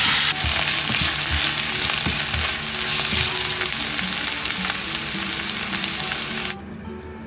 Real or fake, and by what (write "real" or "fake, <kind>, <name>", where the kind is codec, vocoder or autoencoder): real